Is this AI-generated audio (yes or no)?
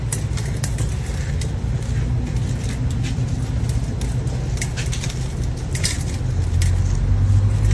no